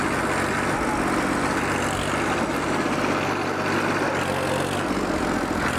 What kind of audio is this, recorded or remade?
recorded